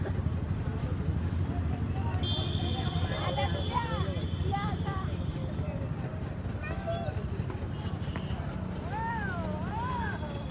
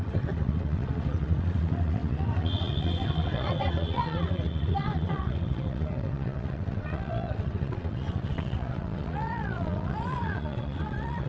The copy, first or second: second